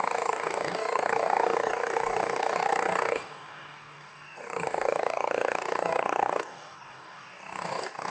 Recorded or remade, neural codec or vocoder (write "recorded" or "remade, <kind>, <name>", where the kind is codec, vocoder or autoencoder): remade, codec, DAC